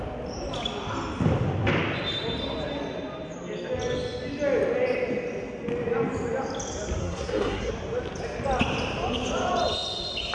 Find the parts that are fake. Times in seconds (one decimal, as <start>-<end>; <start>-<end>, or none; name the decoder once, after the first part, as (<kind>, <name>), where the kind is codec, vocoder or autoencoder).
7.0-7.7 (codec, SNAC)